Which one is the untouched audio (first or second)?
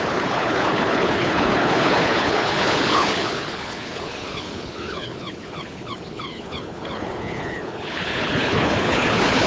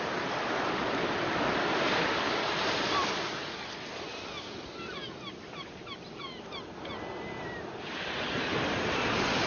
second